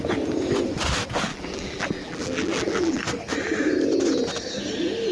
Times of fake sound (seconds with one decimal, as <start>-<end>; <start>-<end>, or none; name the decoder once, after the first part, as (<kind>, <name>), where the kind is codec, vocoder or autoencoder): 1.3-3.0 (vocoder, BigVGAN v2)